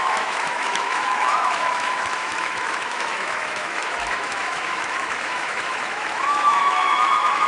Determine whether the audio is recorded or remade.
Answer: remade